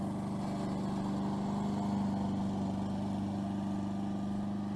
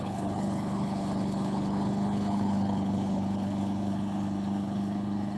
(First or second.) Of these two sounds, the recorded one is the first